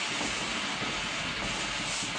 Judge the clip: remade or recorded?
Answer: recorded